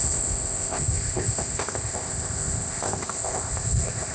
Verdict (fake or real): fake